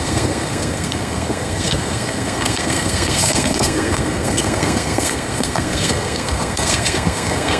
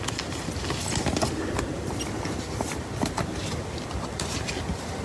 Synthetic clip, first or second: first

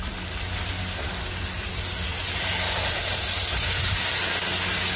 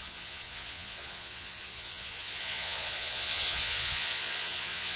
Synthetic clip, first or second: second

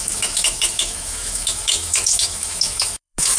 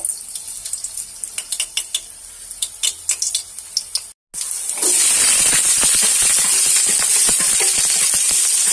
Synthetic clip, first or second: first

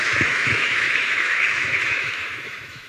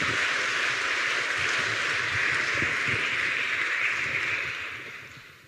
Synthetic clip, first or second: first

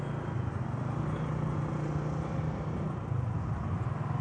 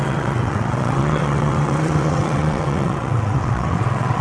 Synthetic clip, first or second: second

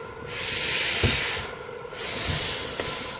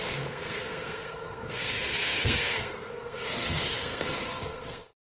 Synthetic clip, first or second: second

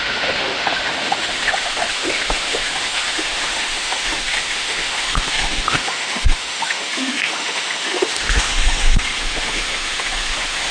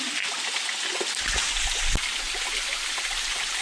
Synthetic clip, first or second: first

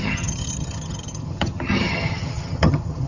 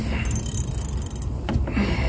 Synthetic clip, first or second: first